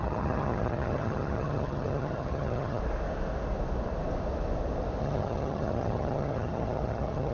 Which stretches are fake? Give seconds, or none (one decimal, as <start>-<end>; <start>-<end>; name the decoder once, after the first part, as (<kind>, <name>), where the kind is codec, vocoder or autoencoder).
0.0-2.8 (vocoder, HiFi-GAN); 5.0-7.3

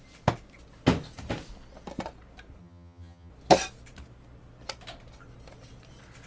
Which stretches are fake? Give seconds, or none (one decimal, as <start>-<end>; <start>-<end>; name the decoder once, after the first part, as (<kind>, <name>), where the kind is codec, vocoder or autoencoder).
2.6-3.3 (vocoder, HiFi-GAN)

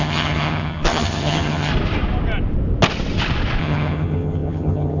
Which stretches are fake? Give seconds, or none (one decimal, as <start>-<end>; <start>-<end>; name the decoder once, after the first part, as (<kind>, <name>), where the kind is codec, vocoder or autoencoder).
0.0-1.7 (vocoder, HiFi-GAN); 3.6-5.0

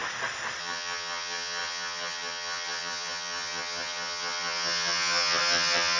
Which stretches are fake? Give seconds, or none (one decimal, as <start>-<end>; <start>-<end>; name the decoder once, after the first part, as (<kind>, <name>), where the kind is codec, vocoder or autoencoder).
0.6-6.0 (vocoder, HiFi-GAN)

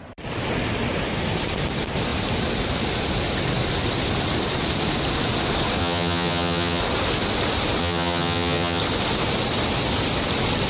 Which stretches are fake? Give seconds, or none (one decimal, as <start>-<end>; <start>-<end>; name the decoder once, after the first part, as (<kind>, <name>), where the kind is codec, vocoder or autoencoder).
5.8-6.8 (vocoder, HiFi-GAN); 7.8-8.8

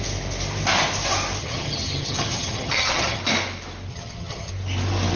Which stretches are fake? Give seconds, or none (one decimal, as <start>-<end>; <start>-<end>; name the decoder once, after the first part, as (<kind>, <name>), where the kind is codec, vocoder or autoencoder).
1.4-3.2 (vocoder, HiFi-GAN); 3.9-4.5

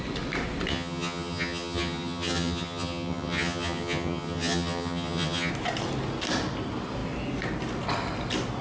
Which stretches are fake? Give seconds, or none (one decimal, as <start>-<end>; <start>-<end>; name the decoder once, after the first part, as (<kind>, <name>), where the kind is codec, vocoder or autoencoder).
0.7-5.5 (vocoder, HiFi-GAN)

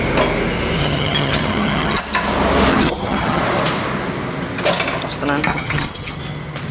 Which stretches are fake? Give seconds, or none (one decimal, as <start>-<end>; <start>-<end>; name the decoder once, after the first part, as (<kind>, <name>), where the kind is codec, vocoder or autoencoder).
0.8-2.0 (vocoder, HiFi-GAN); 2.7-3.4; 5.5-6.2